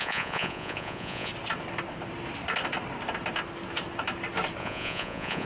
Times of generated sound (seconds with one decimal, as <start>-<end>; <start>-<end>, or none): 0.0-1.3; 4.6-5.5

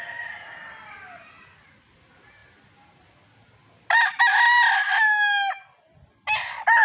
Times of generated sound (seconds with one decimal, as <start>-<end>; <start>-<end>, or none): none

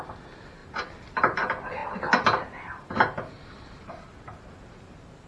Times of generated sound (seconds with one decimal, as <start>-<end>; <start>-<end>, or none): none